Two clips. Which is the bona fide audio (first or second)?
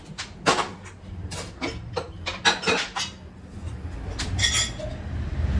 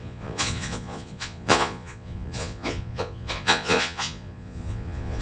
first